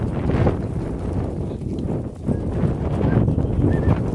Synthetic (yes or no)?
no